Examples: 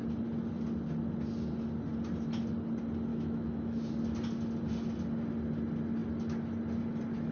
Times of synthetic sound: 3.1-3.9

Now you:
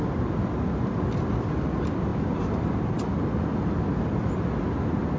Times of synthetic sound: none

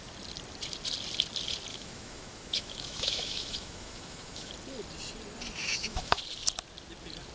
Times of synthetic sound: 1.7-4.5; 5.6-6.2

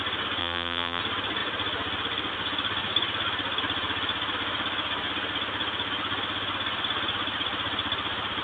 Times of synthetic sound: 0.4-1.0

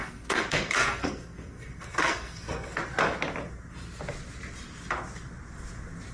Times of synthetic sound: 0.0-2.8

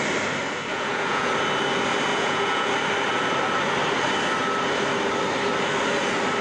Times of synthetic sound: 0.7-1.3; 2.1-2.7